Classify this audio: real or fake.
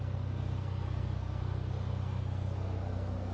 fake